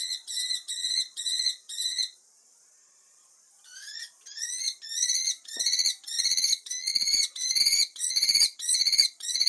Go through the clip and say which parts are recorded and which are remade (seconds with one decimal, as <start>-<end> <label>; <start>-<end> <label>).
0.0-9.5 remade